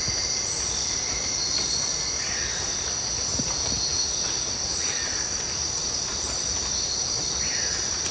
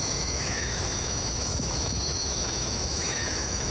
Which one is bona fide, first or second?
first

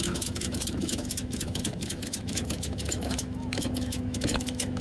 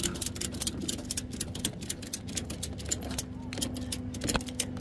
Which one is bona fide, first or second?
second